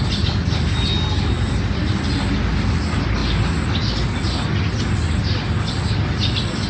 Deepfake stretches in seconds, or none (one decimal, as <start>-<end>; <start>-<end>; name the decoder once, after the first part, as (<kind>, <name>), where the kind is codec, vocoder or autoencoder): none